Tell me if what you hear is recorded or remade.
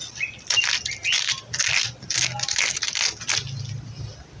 recorded